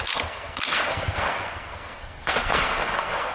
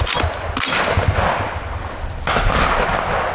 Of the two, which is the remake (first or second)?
first